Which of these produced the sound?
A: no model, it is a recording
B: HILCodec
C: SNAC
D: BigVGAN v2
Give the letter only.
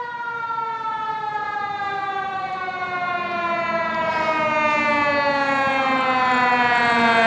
A